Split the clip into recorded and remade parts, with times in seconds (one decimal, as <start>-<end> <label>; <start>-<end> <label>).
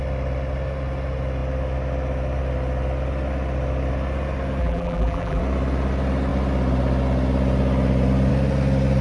0.0-4.6 recorded; 4.6-5.4 remade; 5.4-9.0 recorded